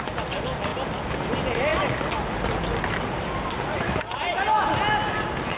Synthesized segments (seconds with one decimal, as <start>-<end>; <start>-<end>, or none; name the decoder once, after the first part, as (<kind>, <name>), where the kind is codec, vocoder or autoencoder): none